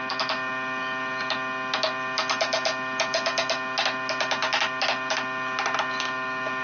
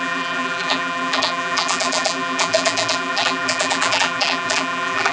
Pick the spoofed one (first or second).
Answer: second